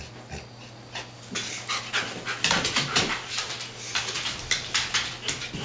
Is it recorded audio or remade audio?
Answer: recorded